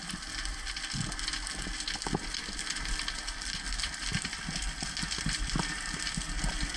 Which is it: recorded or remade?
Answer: recorded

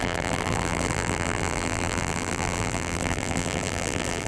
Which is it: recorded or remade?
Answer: remade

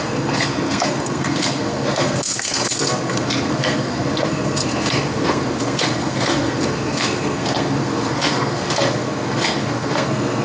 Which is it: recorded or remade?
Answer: remade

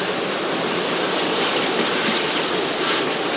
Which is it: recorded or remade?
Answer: remade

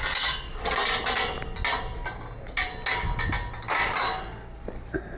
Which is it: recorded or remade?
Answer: recorded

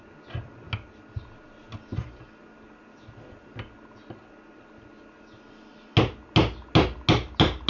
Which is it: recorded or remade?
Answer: recorded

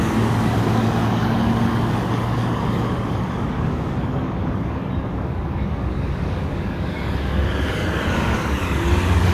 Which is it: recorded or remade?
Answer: remade